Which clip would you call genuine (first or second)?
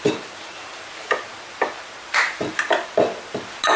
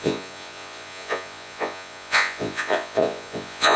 first